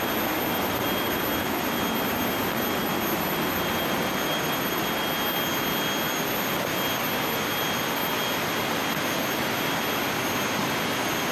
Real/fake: real